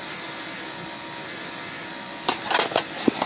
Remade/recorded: remade